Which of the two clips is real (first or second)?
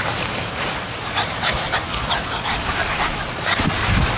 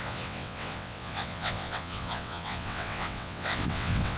first